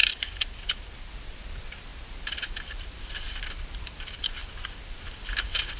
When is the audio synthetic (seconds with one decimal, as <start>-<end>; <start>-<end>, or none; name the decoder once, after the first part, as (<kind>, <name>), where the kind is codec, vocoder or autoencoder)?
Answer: none